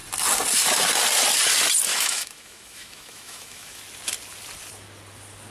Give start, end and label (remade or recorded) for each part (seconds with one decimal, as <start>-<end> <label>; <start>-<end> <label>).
0.0-1.9 recorded; 1.9-3.8 remade; 3.8-5.5 recorded